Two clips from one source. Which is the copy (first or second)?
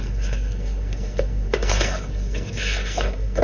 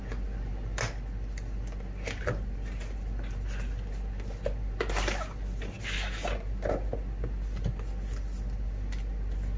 first